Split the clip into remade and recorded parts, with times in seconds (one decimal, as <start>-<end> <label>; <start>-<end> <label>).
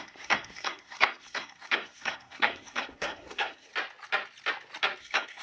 0.0-3.7 remade; 3.7-5.0 recorded; 5.0-5.4 remade